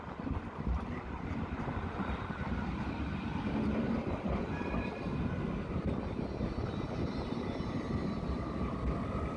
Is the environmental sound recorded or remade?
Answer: recorded